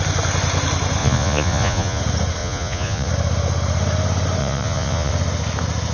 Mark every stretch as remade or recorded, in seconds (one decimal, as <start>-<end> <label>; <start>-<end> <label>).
0.0-1.0 recorded; 1.0-2.0 remade; 2.0-2.4 recorded; 2.4-3.1 remade; 3.1-4.4 recorded; 4.4-5.1 remade; 5.1-5.9 recorded